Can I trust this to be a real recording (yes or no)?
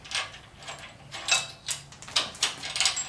yes